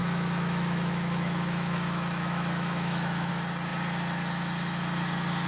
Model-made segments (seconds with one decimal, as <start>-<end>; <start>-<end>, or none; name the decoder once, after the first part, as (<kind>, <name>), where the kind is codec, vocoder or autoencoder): 0.0-3.3 (autoencoder, DAC-VAE)